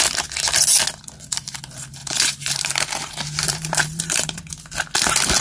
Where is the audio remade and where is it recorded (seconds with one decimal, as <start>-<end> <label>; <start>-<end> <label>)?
0.0-2.0 recorded; 2.0-4.4 remade; 4.4-5.4 recorded